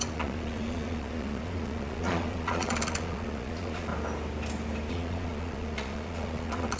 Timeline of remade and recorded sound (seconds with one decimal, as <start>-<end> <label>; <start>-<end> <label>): 0.0-3.9 remade; 3.9-4.9 recorded; 4.9-6.8 remade